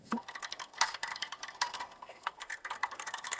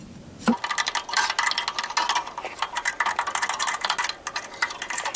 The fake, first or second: first